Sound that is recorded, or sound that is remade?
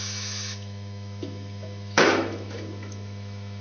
remade